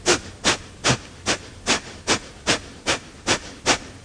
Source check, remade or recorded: recorded